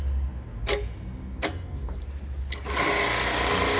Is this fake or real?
real